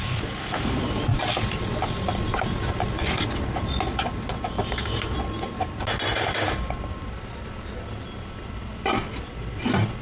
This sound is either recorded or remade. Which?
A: remade